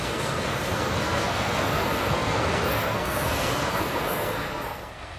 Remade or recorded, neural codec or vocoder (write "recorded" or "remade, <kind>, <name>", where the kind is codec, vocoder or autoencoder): remade, codec, SNAC